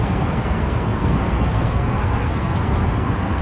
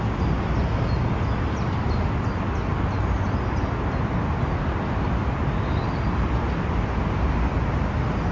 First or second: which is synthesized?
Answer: first